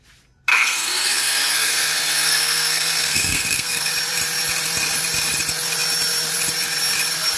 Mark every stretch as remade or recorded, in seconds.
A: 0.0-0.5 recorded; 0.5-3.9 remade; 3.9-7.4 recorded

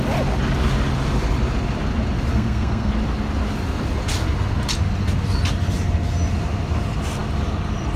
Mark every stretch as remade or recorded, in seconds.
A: 0.0-2.3 recorded; 2.3-2.9 remade; 2.9-8.0 recorded